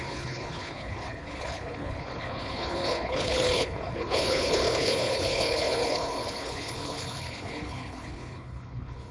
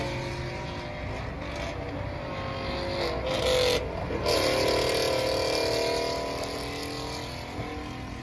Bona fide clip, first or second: second